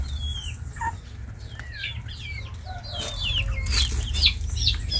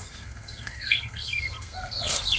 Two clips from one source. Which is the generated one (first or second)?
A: second